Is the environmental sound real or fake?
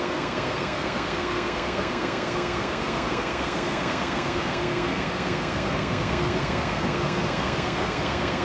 fake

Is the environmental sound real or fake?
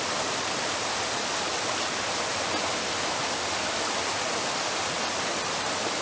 real